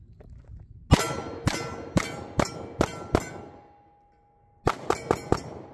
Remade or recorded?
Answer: recorded